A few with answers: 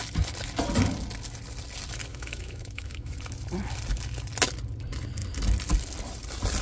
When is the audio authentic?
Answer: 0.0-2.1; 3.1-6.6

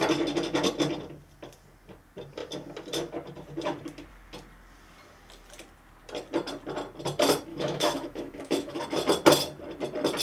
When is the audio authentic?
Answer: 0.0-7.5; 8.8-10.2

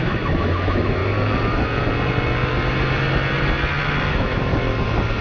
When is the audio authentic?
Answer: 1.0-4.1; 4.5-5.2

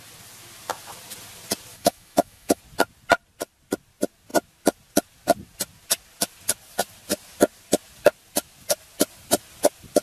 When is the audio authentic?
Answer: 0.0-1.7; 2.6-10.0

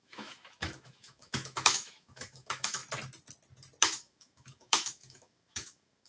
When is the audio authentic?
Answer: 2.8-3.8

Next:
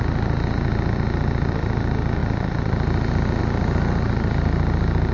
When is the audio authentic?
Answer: 0.0-5.1